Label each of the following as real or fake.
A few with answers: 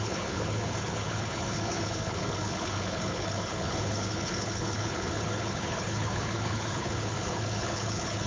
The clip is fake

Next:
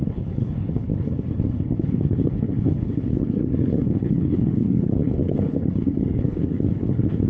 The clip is fake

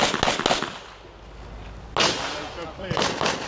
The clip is real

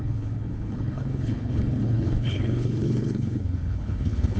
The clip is fake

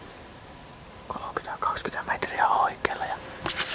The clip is real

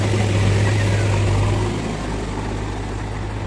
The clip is real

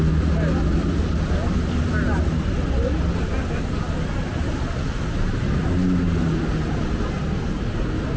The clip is real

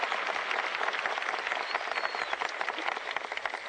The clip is real